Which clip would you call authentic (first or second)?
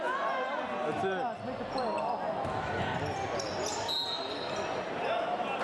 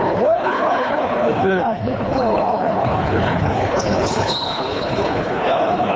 first